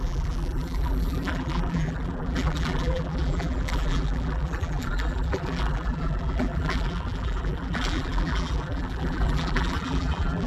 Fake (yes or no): yes